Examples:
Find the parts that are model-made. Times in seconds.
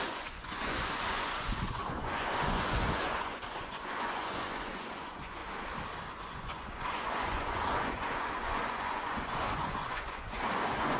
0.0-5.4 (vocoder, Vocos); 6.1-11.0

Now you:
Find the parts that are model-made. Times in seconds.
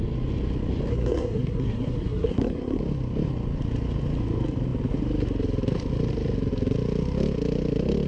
0.9-2.8 (codec, SNAC)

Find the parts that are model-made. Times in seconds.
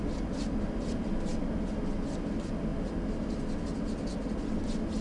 none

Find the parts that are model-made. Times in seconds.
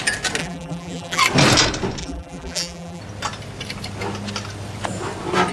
0.4-1.2 (vocoder, BigVGAN v2); 2.0-3.0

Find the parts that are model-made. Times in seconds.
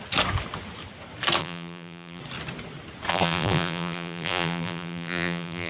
1.4-2.2 (vocoder, BigVGAN v2); 3.1-5.7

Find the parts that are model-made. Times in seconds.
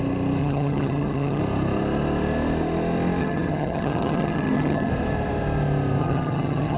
0.4-1.4 (vocoder, HiFi-GAN); 3.2-4.9; 6.0-6.8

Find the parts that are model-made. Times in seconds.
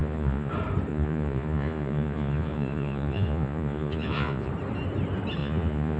0.0-0.5 (vocoder, Vocos); 0.9-4.5; 5.4-6.0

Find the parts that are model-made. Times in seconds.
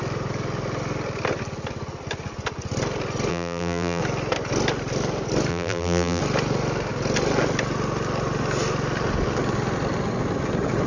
3.3-4.0 (vocoder, BigVGAN v2); 5.5-6.2